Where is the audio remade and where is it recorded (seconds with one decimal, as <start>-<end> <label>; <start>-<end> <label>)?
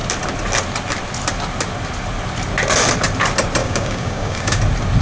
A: 0.0-3.6 recorded; 3.6-4.6 remade; 4.6-5.0 recorded